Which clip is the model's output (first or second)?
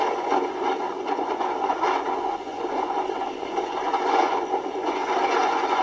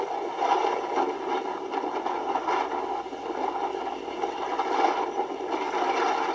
first